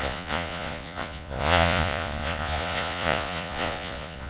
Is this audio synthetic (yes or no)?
yes